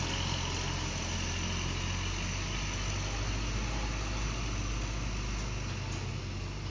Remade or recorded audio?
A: recorded